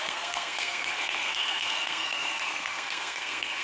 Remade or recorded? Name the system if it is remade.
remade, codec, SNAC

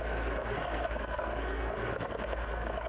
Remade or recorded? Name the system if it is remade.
remade, codec, SNAC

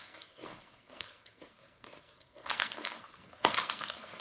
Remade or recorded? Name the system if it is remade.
remade, codec, SNAC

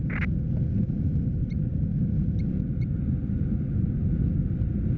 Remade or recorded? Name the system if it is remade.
recorded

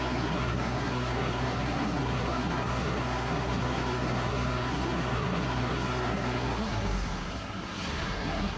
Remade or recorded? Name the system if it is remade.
remade, codec, SNAC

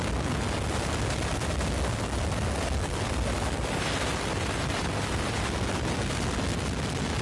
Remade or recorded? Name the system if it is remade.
recorded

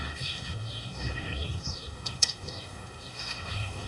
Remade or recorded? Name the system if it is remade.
remade, codec, SNAC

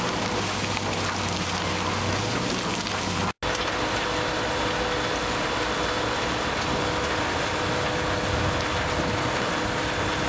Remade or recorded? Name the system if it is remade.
recorded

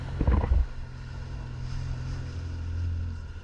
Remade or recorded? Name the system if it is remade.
recorded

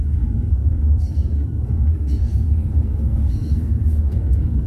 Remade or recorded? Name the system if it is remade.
remade, codec, SNAC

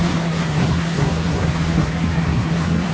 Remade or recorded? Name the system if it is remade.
remade, codec, SNAC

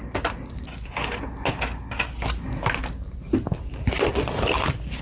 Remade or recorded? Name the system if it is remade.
recorded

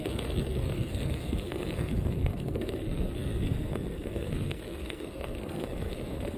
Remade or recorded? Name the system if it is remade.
remade, codec, SNAC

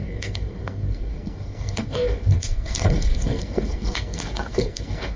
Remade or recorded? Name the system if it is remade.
remade, codec, SNAC